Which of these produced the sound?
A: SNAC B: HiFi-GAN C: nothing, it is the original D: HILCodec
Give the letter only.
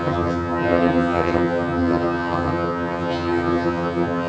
B